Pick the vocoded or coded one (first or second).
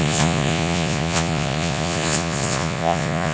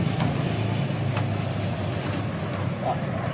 first